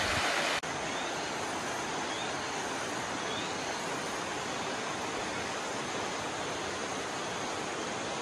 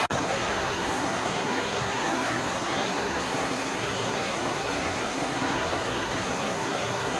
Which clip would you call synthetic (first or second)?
second